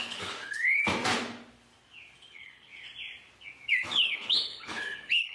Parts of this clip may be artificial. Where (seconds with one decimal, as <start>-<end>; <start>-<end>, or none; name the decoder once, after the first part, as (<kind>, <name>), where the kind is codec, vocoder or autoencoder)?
0.0-0.8 (codec, HILCodec); 2.3-2.7; 3.7-5.3